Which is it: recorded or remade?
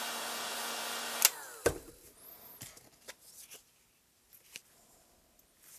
recorded